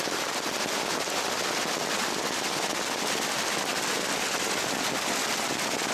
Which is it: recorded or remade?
recorded